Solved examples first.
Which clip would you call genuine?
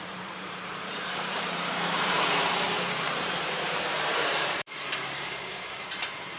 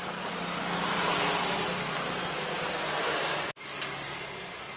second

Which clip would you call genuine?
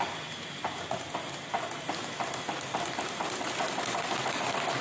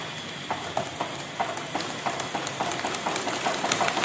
first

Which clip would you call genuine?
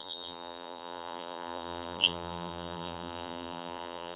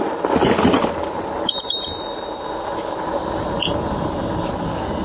second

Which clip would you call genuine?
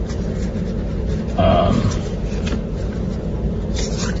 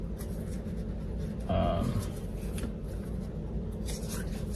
second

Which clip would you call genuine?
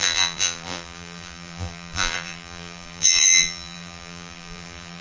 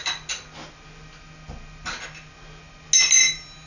second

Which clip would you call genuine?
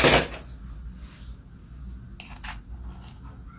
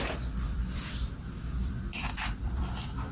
first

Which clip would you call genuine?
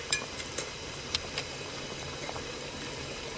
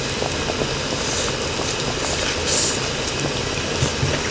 second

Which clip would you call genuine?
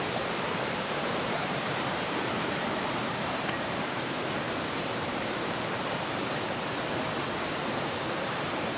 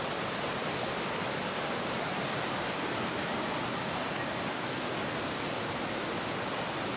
second